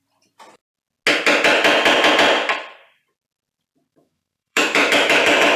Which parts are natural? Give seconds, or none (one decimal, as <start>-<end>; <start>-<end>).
0.0-3.9